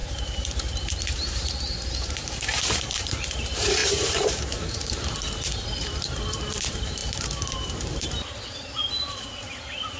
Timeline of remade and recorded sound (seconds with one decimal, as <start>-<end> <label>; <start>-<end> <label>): 0.0-10.0 remade